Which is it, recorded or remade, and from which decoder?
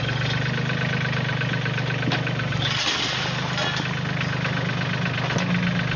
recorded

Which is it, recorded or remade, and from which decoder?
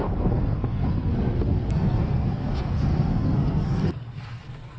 remade, codec, SNAC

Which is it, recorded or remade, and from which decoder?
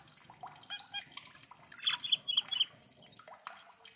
recorded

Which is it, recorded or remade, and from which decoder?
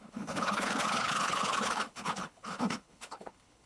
remade, codec, HILCodec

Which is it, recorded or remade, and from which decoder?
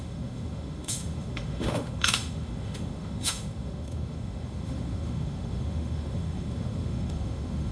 remade, autoencoder, DAC-VAE